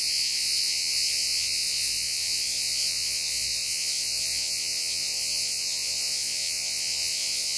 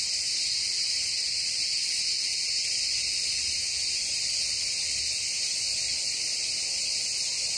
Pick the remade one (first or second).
first